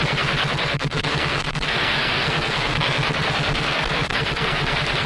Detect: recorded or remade remade